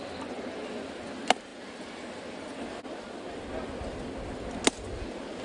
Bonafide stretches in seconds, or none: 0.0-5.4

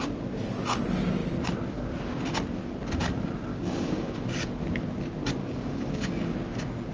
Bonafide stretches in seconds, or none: 0.0-3.5; 4.2-5.4; 6.3-6.9

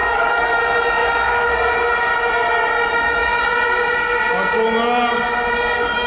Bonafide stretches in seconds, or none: 0.6-6.1

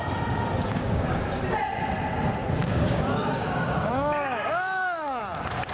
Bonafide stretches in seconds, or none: 0.0-0.6; 1.4-2.6; 5.2-5.7

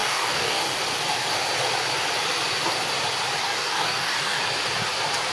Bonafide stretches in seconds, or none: 0.8-3.4; 4.4-5.3